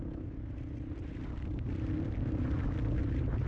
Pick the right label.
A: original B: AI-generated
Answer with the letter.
A